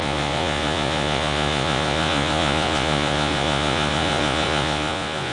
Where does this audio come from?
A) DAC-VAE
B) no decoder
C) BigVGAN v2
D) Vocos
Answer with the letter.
D